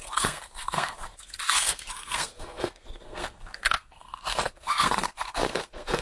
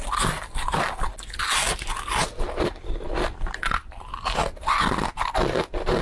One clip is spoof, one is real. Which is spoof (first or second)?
first